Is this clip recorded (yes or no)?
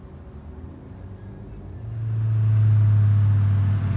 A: yes